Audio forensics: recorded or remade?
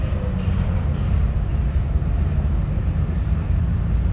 recorded